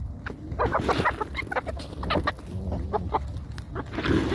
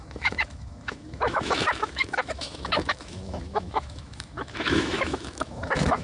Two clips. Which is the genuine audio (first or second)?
first